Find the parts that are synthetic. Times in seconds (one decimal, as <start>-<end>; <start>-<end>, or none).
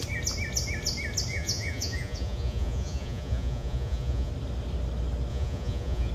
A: 1.3-4.3; 5.3-6.1